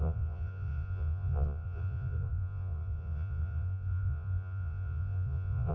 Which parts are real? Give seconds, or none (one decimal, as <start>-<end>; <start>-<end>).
none